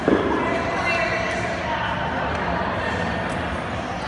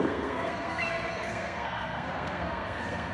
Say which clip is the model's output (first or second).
second